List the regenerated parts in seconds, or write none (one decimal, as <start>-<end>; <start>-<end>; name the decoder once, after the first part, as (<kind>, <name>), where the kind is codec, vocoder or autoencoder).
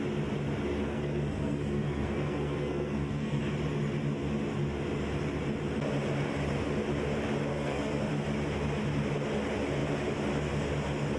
0.8-3.4 (codec, SNAC); 7.5-8.1